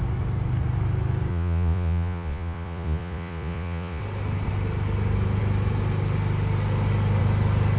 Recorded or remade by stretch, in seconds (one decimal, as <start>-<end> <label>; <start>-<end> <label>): 0.0-1.3 recorded; 1.3-4.0 remade; 4.0-7.8 recorded